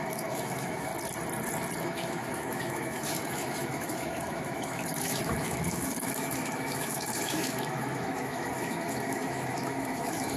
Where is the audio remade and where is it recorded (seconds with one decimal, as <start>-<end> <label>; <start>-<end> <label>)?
0.0-0.9 remade; 0.9-1.8 recorded; 1.8-10.4 remade